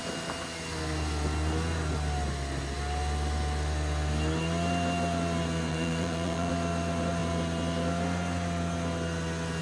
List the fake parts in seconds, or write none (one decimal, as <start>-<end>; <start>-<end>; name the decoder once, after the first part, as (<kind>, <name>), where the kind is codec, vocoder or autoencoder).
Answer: 5.7-6.5 (vocoder, Vocos)